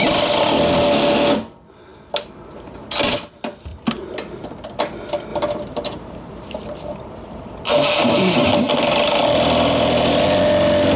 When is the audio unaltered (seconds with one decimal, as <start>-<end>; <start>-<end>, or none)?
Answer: 0.0-5.3; 7.7-11.0